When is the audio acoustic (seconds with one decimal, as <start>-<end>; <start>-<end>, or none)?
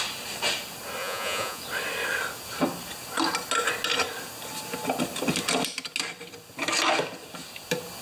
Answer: 0.0-1.0; 1.6-8.0